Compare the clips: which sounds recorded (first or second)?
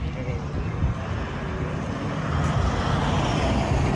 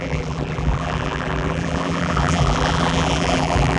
first